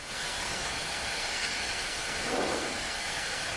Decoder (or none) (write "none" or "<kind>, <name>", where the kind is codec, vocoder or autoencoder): codec, SNAC